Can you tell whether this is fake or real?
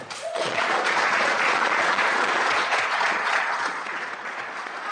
fake